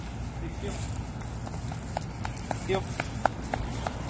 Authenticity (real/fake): real